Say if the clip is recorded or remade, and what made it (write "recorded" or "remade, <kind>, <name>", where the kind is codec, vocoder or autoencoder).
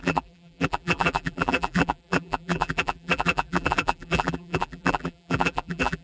remade, vocoder, BigVGAN v2